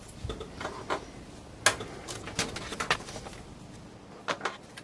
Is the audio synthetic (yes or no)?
no